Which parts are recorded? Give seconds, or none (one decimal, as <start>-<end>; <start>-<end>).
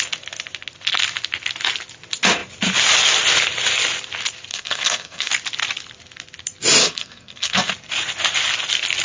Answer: 0.0-4.5; 5.3-6.8; 7.7-9.0